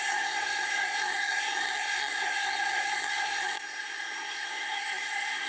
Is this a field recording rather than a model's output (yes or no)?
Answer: no